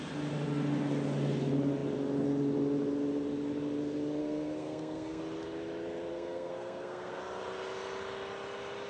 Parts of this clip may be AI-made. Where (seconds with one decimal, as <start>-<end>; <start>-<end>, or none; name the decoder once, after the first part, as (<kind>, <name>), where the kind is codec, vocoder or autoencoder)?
4.2-5.2 (codec, SNAC); 6.1-7.2